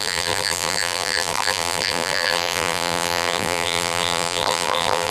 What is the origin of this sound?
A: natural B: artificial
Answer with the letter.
B